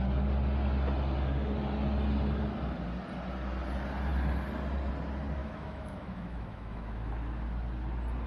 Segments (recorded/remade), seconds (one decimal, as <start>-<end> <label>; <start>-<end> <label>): 0.0-5.4 recorded; 5.4-7.1 remade; 7.1-8.3 recorded